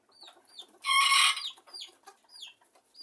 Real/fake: real